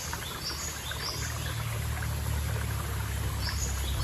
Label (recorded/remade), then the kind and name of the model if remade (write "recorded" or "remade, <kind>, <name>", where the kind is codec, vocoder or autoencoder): recorded